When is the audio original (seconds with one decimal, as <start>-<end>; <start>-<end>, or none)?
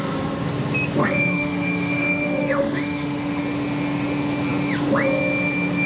0.0-1.0; 3.4-5.9